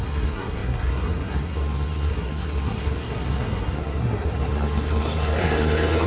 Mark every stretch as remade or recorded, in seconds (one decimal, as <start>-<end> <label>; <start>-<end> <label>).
0.0-6.1 remade